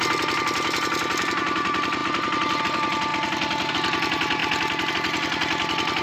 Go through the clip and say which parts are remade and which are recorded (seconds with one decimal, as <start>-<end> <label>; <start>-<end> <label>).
0.0-6.0 recorded